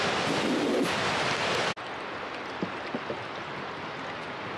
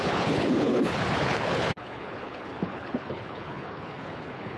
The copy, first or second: second